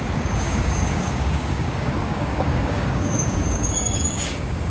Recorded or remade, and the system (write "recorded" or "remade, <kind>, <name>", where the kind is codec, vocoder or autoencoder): remade, codec, DAC